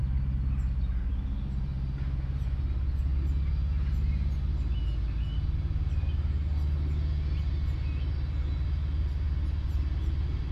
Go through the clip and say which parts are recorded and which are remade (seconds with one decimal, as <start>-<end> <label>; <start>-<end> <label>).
0.0-10.5 recorded